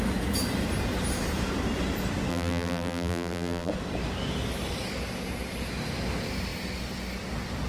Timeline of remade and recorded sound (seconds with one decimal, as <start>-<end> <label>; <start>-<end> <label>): 0.0-2.3 recorded; 2.3-3.7 remade; 3.7-7.7 recorded